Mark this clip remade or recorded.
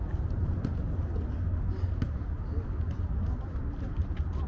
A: recorded